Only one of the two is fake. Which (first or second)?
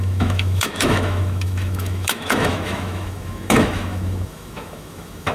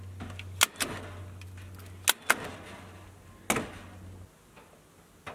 first